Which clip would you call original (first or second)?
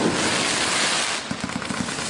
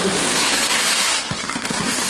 first